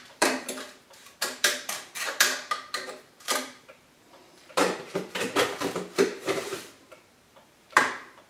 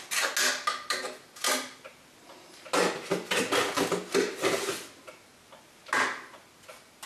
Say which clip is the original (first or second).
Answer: second